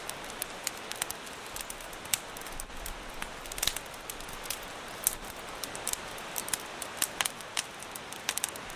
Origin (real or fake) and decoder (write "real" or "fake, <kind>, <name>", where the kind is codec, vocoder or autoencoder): real